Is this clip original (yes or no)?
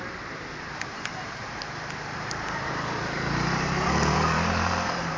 no